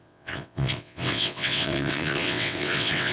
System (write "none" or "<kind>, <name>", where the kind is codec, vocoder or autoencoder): vocoder, WaveNeXt